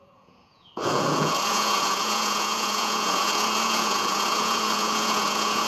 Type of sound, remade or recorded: remade